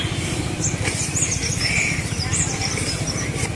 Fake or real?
real